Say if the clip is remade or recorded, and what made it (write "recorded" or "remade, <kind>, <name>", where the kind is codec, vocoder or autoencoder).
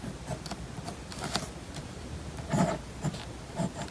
recorded